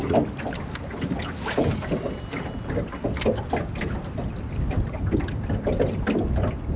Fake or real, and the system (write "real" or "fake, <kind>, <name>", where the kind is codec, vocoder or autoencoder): real